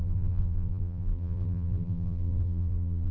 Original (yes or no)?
no